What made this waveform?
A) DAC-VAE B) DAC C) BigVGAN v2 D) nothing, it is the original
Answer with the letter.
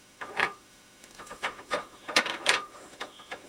A